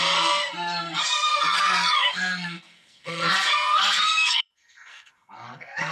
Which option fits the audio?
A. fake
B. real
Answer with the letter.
A